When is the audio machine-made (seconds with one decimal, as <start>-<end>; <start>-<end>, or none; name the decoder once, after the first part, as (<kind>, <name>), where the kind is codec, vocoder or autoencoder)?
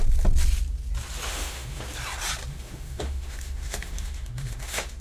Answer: 1.3-1.8 (autoencoder, DAC-VAE); 2.5-5.0